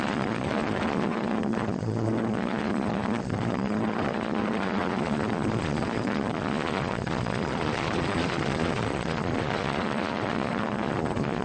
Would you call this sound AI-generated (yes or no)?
yes